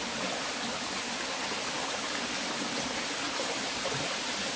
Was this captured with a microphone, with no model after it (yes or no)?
yes